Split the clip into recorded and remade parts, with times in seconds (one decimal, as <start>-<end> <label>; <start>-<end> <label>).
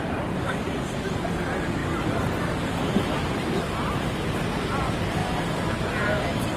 0.0-6.6 recorded